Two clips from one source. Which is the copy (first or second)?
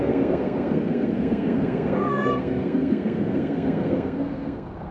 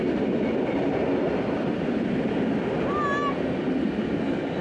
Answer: first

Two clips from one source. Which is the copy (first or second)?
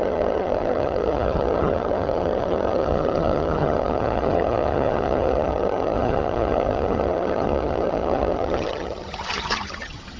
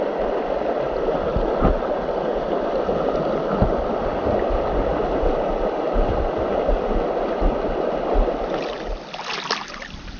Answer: first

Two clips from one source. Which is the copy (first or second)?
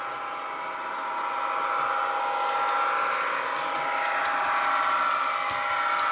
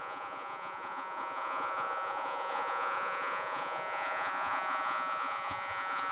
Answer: second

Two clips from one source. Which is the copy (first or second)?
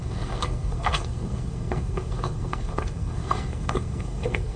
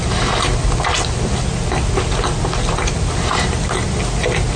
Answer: first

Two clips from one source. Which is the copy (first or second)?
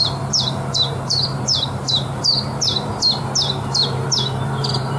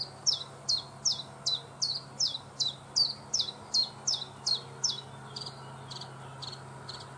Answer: first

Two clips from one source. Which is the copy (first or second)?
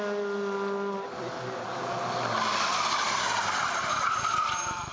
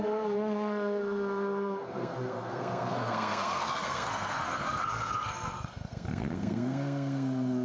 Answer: second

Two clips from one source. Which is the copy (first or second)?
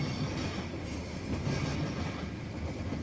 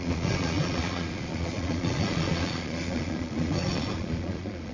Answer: second